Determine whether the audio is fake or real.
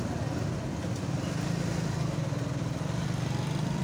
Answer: real